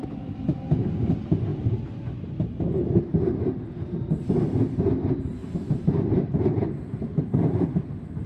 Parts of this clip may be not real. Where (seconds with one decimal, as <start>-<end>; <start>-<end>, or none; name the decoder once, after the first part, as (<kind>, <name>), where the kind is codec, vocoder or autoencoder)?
5.4-7.7 (vocoder, BigVGAN v2)